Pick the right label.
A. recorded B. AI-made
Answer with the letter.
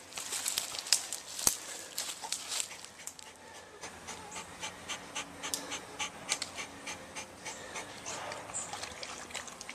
A